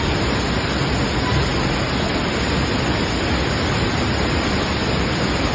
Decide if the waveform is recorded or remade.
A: recorded